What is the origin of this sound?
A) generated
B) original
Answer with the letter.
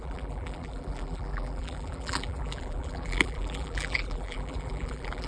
A